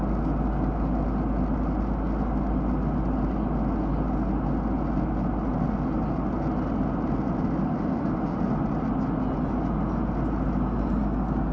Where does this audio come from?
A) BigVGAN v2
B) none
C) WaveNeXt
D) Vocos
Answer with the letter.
B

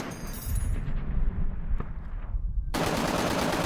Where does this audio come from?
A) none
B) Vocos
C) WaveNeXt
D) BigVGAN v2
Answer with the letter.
D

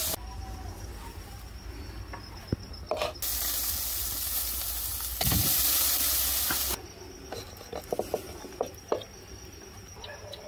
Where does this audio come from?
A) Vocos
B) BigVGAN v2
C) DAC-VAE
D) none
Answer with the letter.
D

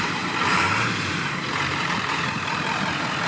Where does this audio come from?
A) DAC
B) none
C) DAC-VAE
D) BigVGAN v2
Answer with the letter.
D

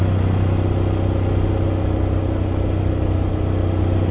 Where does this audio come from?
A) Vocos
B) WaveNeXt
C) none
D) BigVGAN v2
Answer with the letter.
C